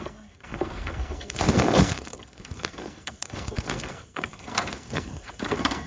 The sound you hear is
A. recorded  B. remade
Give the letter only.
B